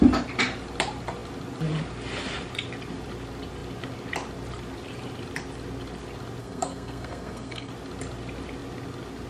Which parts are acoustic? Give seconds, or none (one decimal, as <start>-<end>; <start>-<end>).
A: 0.0-6.4; 7.7-9.3